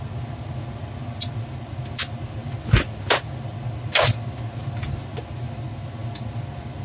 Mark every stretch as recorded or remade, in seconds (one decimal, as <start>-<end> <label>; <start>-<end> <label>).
0.0-6.8 recorded